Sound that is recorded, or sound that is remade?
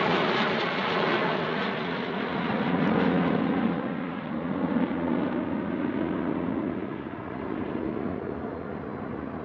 remade